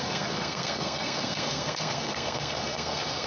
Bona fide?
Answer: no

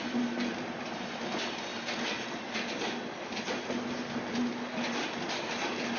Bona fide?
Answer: yes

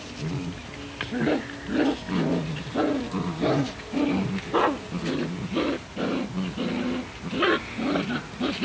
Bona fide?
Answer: yes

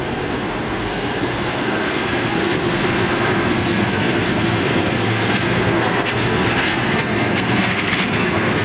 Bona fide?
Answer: no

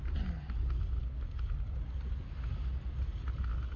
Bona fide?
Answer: yes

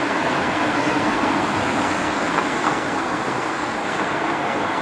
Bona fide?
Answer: no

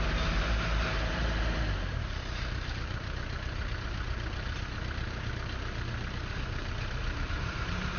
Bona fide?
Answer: no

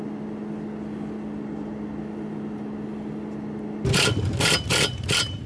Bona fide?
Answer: yes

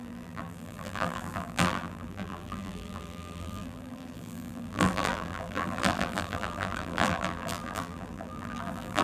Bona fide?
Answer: no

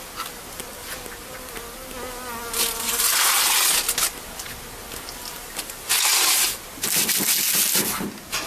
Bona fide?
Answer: yes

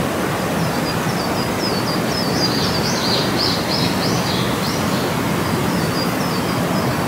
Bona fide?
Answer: yes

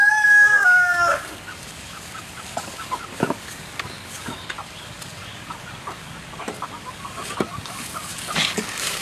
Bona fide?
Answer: no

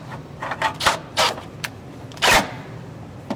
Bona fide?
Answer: no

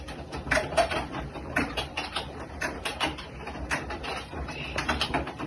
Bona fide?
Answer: no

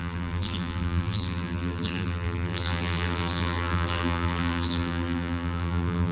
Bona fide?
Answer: no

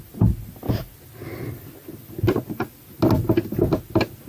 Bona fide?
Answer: yes